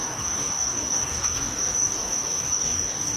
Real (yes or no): no